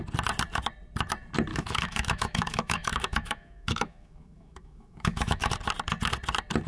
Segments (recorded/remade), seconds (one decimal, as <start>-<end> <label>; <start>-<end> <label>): 0.0-1.5 recorded; 1.5-5.5 remade; 5.5-6.7 recorded

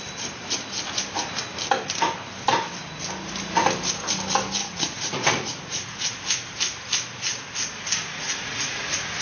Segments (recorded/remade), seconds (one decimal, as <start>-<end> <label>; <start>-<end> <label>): 0.0-4.6 recorded; 4.6-6.1 remade; 6.1-8.1 recorded; 8.1-9.2 remade

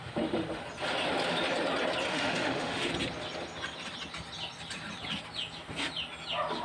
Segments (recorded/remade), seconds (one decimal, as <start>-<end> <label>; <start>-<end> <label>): 0.0-0.6 remade; 0.6-2.1 recorded; 2.1-2.9 remade; 2.9-6.6 recorded

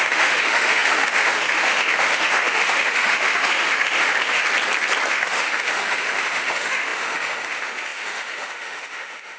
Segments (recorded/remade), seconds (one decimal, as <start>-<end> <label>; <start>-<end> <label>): 0.0-4.4 remade; 4.4-5.1 recorded; 5.1-9.4 remade

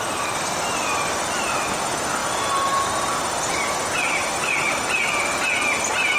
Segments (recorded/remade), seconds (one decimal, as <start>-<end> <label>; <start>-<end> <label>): 0.0-6.2 recorded

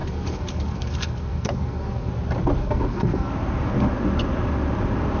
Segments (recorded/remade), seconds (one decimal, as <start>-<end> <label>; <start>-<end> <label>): 0.0-2.1 remade; 2.1-2.6 recorded; 2.6-3.3 remade; 3.3-5.2 recorded

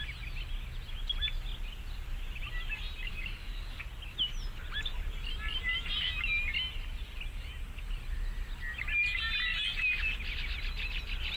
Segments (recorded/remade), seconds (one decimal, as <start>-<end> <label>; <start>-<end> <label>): 0.0-3.1 recorded; 3.1-3.8 remade; 3.8-11.4 recorded

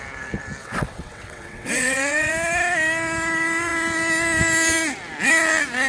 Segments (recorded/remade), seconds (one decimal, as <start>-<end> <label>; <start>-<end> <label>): 0.0-0.6 recorded; 0.6-2.3 remade; 2.3-5.9 recorded